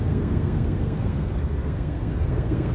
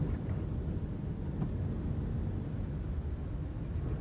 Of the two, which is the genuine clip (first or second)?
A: second